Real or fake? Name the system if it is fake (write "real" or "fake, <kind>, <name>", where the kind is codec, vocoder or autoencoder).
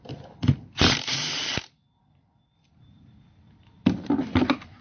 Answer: real